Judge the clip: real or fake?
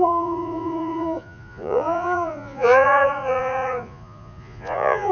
fake